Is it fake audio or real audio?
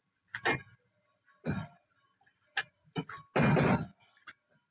real